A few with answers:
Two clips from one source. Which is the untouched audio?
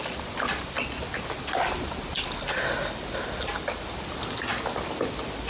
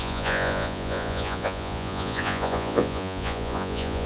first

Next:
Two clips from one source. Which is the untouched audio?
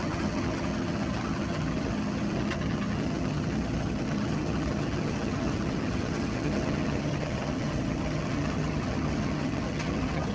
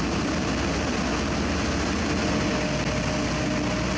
second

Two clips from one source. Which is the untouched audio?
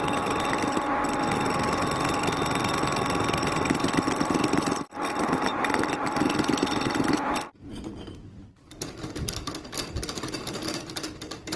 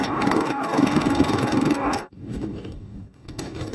first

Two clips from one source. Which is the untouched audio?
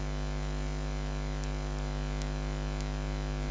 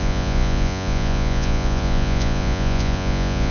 first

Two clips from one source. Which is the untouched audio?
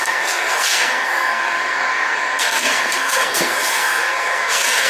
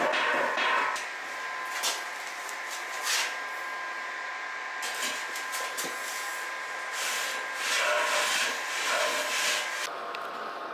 second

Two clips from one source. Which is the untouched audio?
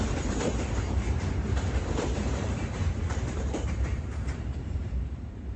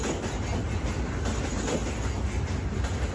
second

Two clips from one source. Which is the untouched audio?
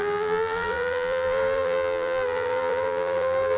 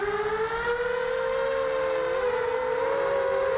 second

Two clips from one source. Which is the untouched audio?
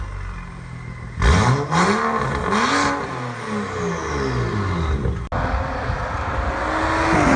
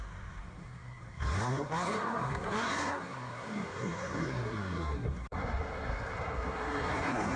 first